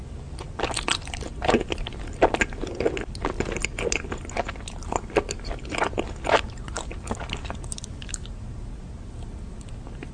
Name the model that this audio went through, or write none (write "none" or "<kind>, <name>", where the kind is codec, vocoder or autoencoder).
none